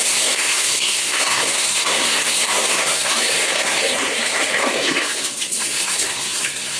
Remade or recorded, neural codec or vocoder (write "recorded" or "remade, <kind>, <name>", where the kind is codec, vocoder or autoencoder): remade, codec, SNAC